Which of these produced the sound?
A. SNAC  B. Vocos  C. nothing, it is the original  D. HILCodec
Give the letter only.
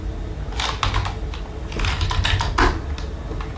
C